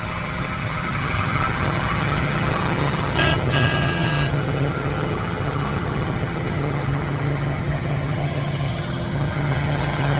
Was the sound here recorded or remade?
remade